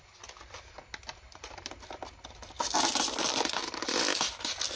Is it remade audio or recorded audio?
recorded